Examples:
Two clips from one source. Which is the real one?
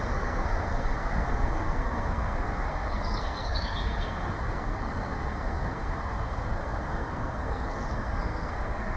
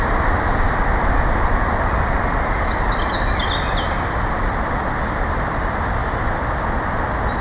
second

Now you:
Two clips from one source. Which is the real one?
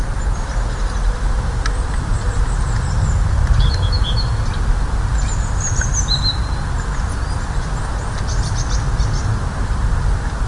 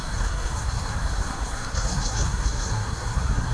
first